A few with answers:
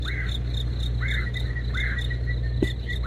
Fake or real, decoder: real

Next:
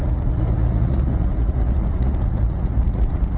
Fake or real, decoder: fake, vocoder, Vocos